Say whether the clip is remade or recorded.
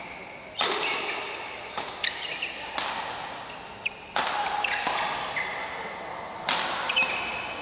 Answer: recorded